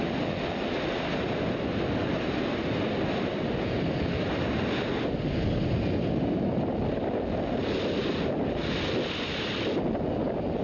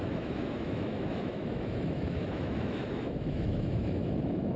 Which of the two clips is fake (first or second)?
second